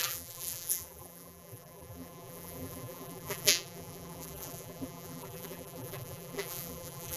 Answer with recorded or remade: remade